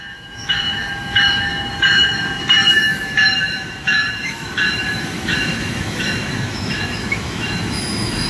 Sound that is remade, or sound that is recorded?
remade